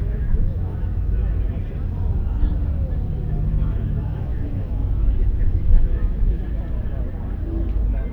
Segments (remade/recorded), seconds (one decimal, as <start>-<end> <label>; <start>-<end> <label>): 0.0-1.2 remade; 1.2-3.5 recorded; 3.5-6.4 remade; 6.4-8.1 recorded